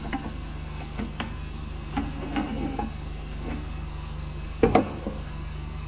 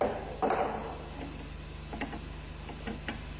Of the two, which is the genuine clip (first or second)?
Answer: second